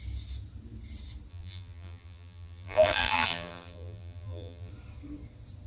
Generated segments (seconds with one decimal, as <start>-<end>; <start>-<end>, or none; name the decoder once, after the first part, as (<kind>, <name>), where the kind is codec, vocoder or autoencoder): 1.3-4.7 (vocoder, BigVGAN v2)